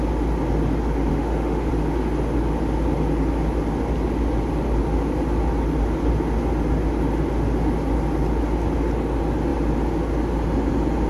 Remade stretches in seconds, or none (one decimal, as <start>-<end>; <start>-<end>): 1.1-1.7